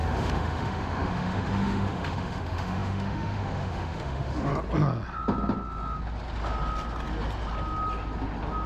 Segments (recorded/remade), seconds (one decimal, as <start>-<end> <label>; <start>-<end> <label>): 0.0-4.5 remade; 4.5-8.7 recorded